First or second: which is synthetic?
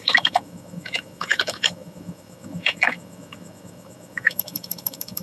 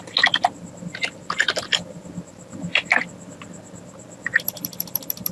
first